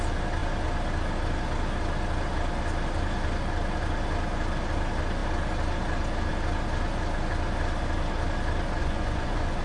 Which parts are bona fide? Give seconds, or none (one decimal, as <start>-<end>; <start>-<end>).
0.0-8.8